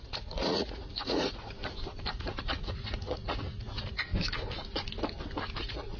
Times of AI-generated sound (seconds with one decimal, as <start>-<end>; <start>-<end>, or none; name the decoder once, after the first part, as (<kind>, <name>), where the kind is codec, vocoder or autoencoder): 0.0-1.6 (vocoder, Vocos); 2.1-4.1; 5.6-6.0